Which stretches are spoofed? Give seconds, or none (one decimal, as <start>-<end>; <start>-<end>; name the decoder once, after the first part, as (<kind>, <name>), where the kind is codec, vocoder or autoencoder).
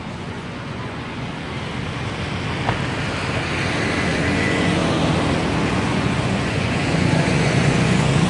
0.0-1.3 (vocoder, Vocos); 4.0-4.8; 5.7-8.3